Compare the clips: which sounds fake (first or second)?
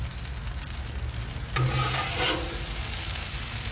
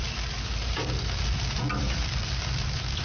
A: second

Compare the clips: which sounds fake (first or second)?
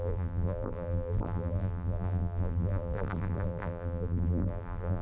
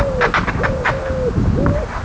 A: first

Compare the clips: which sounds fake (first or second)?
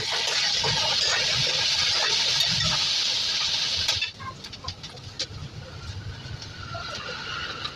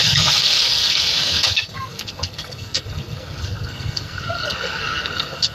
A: second